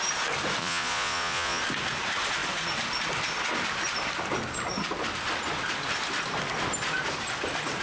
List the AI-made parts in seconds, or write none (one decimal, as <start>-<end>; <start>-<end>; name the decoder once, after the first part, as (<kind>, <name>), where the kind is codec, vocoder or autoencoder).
0.6-1.6 (vocoder, Vocos)